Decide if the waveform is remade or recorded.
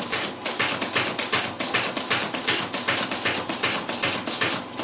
recorded